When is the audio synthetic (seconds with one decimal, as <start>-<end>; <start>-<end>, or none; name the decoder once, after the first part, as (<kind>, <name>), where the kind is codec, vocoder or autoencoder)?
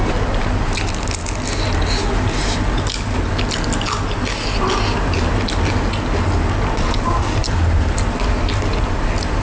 none